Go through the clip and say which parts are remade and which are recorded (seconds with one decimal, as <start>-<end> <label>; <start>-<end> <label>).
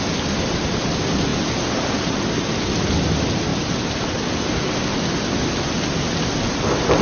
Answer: 0.0-3.5 recorded; 3.5-4.3 remade; 4.3-7.0 recorded